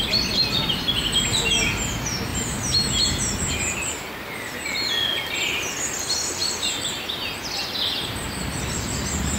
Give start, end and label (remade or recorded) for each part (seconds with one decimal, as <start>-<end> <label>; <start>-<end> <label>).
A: 0.0-2.3 recorded; 2.3-4.1 remade; 4.1-9.4 recorded